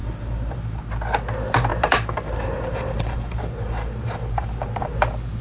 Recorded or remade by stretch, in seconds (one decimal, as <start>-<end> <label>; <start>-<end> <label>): 0.0-0.8 remade; 0.8-1.7 recorded; 1.7-4.9 remade; 4.9-5.4 recorded